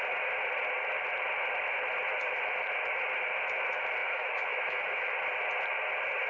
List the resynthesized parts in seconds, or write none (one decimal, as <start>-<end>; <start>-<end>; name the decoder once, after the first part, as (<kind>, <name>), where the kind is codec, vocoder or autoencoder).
4.0-5.1 (autoencoder, DAC-VAE)